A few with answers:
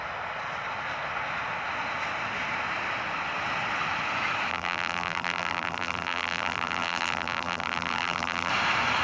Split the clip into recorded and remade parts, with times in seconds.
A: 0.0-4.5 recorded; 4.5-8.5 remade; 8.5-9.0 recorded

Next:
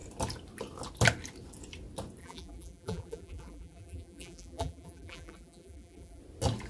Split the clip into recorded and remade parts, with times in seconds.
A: 0.0-2.2 recorded; 2.2-6.2 remade; 6.2-6.7 recorded

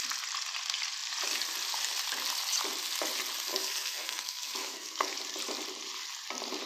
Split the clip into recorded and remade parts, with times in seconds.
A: 0.0-3.5 recorded; 3.5-5.1 remade; 5.1-6.7 recorded

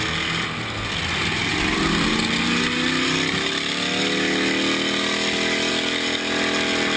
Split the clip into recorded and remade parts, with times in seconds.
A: 0.0-7.0 recorded

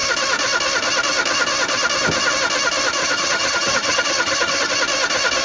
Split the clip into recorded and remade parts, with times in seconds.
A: 0.0-3.0 recorded; 3.0-4.7 remade; 4.7-5.4 recorded